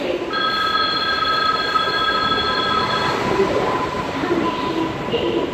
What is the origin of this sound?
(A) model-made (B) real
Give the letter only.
B